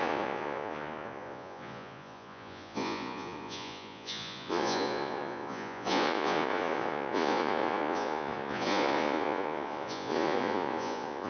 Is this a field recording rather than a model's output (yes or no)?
no